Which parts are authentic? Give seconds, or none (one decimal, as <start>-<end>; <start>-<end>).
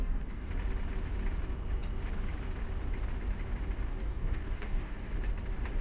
0.5-3.9; 5.1-5.8